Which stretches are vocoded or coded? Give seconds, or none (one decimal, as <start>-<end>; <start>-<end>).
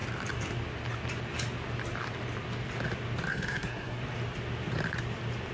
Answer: 3.3-4.0